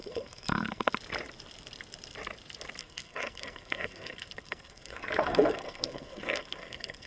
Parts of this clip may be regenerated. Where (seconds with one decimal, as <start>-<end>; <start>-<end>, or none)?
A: 0.0-0.9; 2.8-7.1